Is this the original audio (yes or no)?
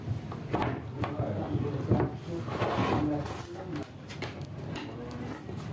yes